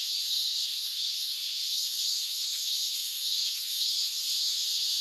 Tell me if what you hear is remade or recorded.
remade